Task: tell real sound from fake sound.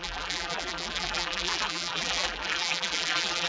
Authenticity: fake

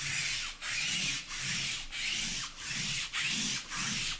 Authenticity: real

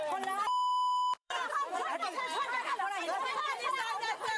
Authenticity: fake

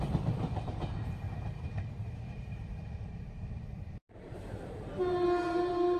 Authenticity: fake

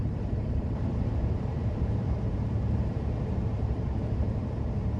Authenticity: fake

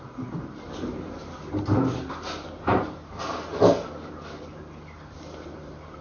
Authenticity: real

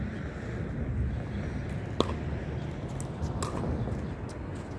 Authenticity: real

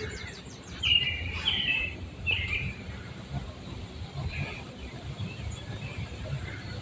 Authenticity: fake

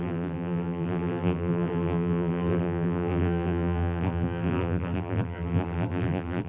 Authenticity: fake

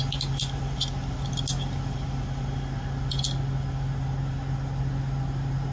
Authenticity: real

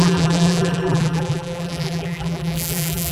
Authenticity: fake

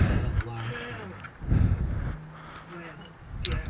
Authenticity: real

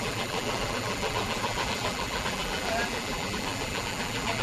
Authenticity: fake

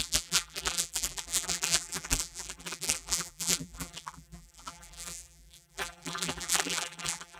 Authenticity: fake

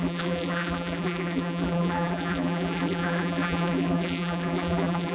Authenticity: fake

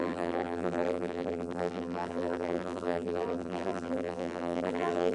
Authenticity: fake